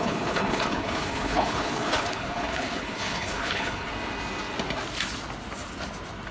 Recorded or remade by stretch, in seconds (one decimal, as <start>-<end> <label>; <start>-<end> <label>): 0.0-3.9 remade; 3.9-6.3 recorded